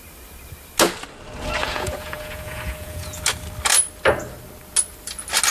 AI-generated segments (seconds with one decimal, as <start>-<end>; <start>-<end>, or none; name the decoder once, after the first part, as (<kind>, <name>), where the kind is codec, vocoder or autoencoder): 1.6-3.2 (vocoder, Vocos)